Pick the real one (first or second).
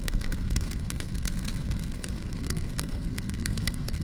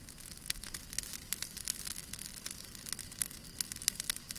second